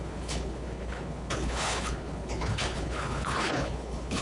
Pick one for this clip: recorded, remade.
remade